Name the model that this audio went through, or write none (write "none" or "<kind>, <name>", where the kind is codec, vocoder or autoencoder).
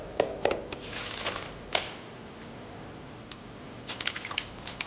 none